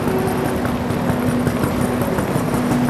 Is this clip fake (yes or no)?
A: no